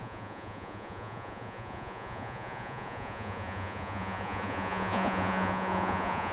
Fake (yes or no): yes